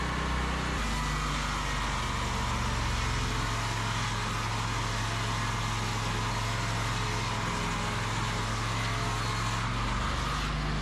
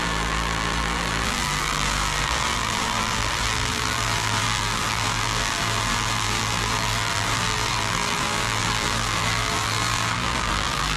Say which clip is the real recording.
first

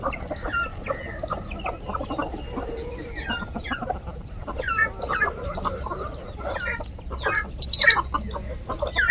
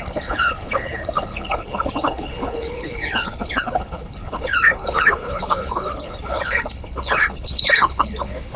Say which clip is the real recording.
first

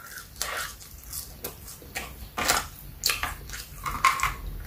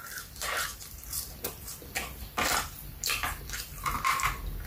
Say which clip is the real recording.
first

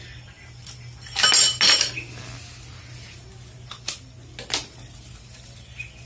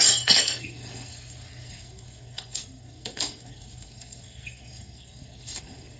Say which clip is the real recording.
first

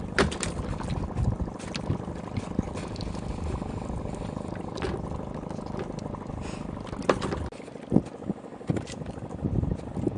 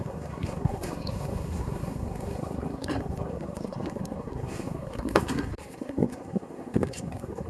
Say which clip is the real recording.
first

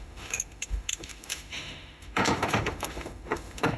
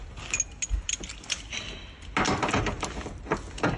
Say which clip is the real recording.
second